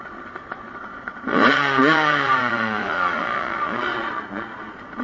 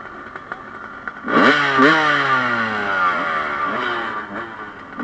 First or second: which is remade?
first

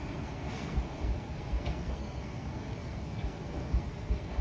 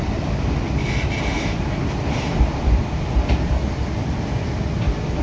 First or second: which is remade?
first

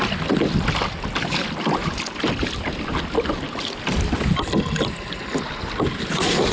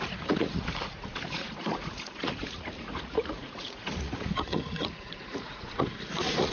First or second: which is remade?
second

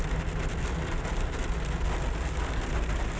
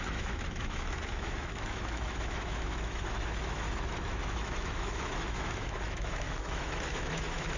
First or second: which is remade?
second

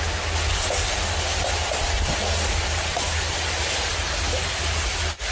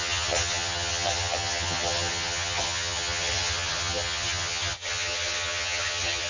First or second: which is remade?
second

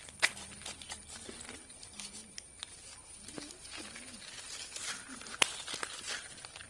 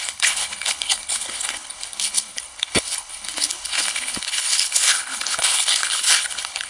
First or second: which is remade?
second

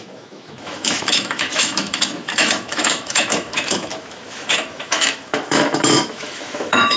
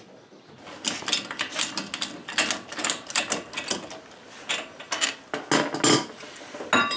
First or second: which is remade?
first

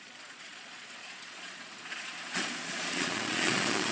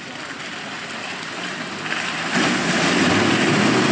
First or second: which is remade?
first